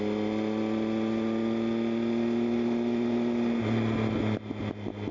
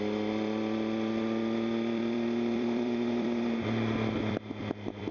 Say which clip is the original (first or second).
first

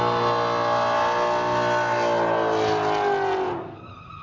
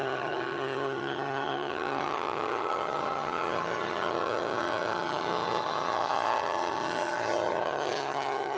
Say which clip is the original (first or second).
first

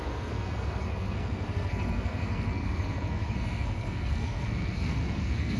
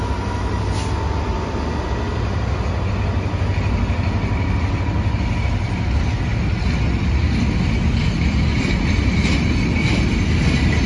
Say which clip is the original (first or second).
second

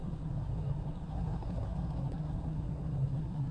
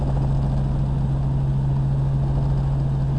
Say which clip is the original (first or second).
second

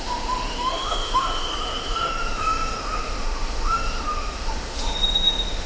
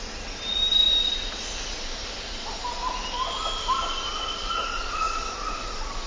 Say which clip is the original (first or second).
second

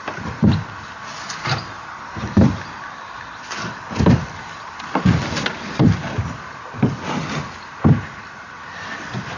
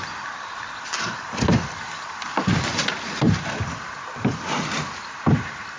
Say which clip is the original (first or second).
first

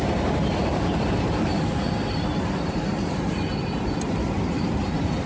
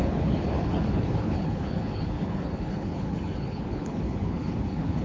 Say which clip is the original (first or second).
first